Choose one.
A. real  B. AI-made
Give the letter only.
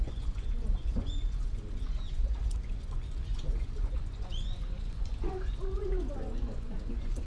B